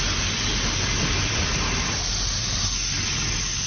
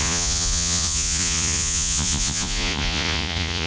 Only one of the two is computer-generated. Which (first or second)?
second